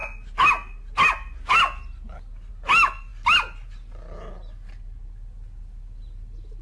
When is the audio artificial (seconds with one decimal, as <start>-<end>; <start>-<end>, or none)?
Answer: none